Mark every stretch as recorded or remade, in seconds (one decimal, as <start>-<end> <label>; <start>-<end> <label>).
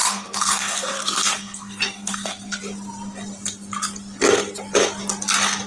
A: 0.0-2.6 remade; 2.6-5.7 recorded